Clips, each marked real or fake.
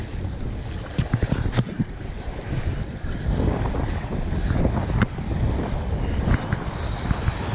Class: real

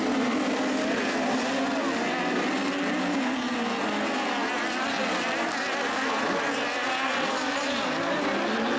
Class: real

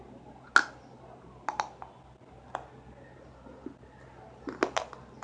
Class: real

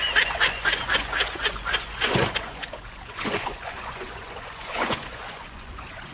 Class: fake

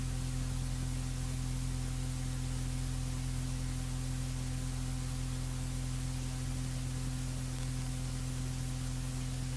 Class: real